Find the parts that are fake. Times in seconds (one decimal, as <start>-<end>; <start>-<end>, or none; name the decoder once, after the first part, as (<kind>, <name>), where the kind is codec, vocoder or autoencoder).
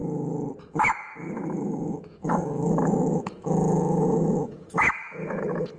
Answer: 0.6-5.8 (autoencoder, DAC-VAE)